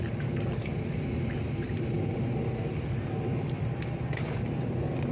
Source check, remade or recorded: recorded